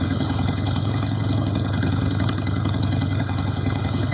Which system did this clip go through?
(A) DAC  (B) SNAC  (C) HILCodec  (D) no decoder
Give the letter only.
C